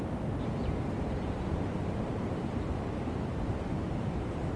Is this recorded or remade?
remade